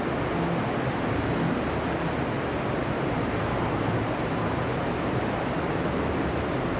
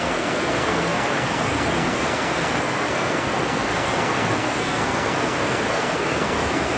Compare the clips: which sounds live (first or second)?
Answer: first